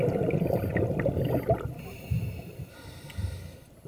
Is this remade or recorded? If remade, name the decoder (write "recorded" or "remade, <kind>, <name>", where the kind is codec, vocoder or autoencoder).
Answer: recorded